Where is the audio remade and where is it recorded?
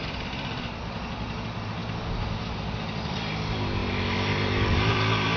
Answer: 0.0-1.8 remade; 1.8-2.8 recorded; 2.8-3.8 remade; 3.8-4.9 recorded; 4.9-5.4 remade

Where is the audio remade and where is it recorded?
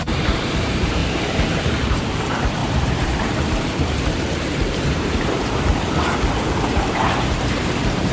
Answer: 0.0-1.0 remade; 1.0-1.9 recorded; 1.9-5.7 remade; 5.7-6.7 recorded; 6.7-8.1 remade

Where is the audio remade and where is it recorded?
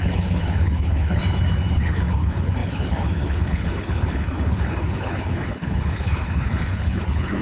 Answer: 0.0-1.2 remade; 1.2-1.7 recorded; 1.7-7.4 remade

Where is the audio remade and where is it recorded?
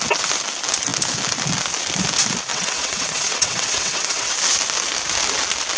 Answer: 0.0-2.5 recorded; 2.5-4.3 remade; 4.3-5.8 recorded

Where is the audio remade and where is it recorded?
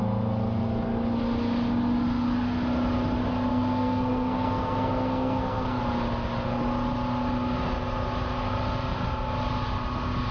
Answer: 0.0-3.5 recorded; 3.5-5.8 remade; 5.8-10.3 recorded